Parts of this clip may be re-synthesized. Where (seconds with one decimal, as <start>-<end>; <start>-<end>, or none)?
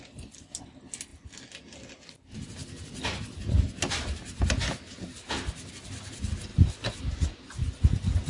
0.0-1.1; 5.7-6.5